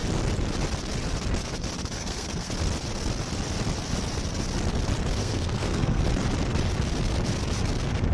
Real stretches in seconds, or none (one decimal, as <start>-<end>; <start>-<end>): 0.0-2.0; 2.5-5.2; 6.0-8.1